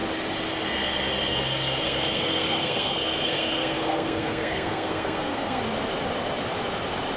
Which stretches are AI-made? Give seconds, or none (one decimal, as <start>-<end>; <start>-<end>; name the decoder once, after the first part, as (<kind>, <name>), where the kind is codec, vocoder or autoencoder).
1.3-5.6 (codec, SNAC)